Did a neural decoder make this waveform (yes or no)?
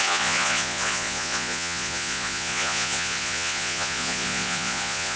yes